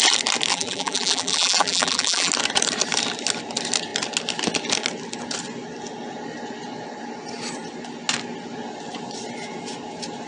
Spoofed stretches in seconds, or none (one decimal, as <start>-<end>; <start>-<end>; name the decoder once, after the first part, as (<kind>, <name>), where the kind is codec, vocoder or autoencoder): 0.5-2.3 (vocoder, BigVGAN v2)